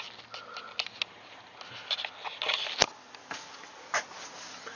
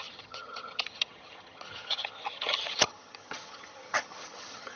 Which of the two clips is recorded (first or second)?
first